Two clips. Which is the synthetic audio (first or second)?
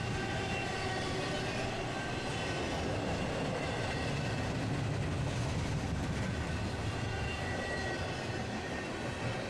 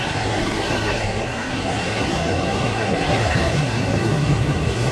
second